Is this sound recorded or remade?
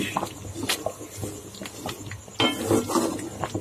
recorded